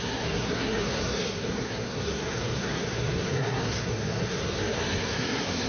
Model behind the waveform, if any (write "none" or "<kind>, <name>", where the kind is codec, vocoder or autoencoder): codec, SNAC